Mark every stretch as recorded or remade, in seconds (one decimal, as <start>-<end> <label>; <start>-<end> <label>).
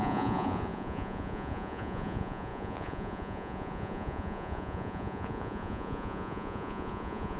0.0-7.4 remade